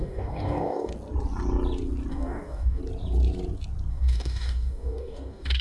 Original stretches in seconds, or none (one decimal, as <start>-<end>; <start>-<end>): 0.9-2.1; 2.8-3.9